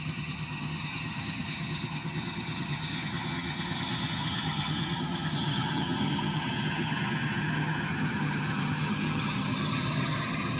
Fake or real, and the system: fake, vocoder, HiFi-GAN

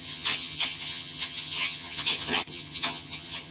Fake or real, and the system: fake, vocoder, HiFi-GAN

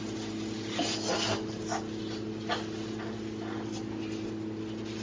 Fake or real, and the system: real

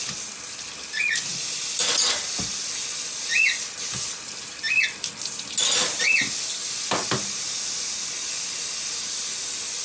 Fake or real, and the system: real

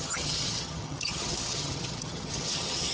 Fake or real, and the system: fake, vocoder, HiFi-GAN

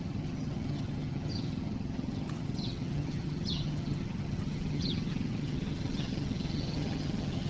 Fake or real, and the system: fake, vocoder, HiFi-GAN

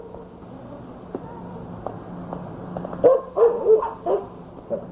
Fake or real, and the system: real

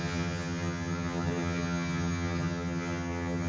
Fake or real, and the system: fake, vocoder, HiFi-GAN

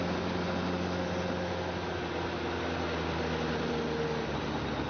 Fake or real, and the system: real